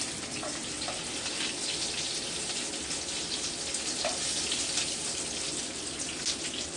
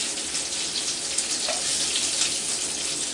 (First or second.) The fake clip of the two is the first